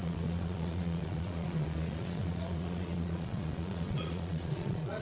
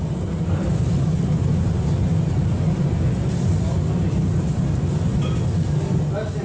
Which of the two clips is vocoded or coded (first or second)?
first